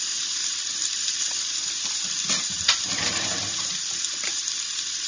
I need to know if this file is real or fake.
fake